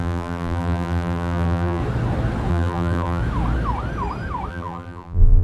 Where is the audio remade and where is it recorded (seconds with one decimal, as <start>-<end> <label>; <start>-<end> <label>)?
0.0-1.8 remade; 1.8-2.5 recorded; 2.5-3.2 remade; 3.2-4.5 recorded; 4.5-5.4 remade